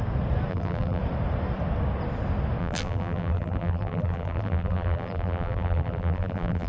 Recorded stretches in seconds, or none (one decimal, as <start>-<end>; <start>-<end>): 0.0-0.5; 1.0-2.6